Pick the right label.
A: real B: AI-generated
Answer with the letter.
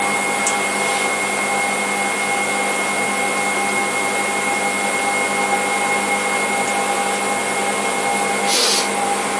A